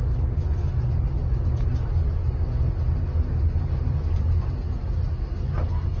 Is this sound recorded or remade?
recorded